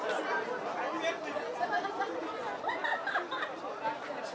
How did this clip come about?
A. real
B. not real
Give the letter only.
A